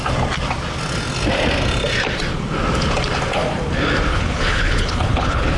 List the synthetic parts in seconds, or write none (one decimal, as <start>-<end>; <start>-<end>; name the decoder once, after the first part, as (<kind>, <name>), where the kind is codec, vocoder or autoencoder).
4.1-5.6 (codec, HILCodec)